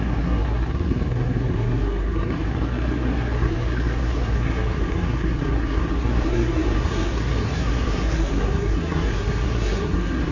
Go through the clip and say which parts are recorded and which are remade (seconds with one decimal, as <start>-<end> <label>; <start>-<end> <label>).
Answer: 0.0-10.3 remade